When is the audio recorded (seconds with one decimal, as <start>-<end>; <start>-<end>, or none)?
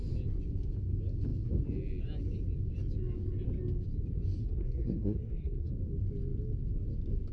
0.0-4.4; 5.7-7.3